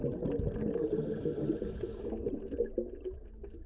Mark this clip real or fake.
real